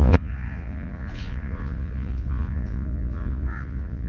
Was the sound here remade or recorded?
remade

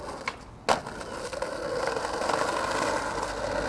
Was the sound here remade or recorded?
recorded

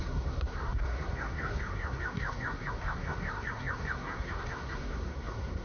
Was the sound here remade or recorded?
remade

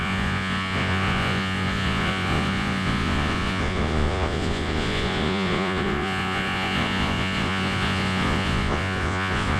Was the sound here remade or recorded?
remade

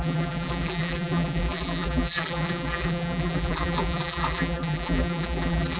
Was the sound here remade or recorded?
remade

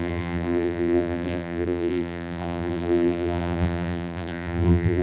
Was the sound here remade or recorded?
remade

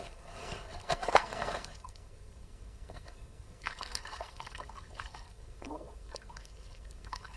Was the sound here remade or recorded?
remade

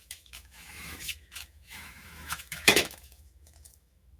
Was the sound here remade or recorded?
remade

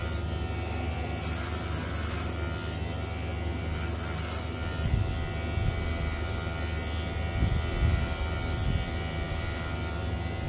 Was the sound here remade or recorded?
recorded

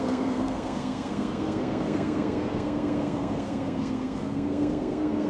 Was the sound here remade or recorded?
remade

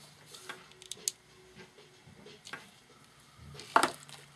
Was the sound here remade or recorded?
recorded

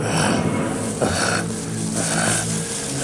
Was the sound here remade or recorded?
recorded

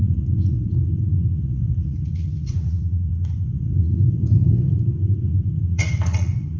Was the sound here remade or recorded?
remade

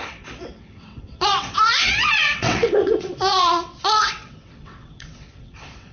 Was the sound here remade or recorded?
remade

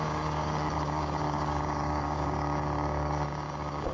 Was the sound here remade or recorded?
remade